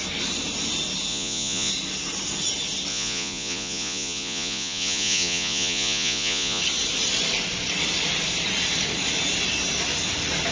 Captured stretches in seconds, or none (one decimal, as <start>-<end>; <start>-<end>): 0.0-1.1; 1.7-2.9; 6.6-10.5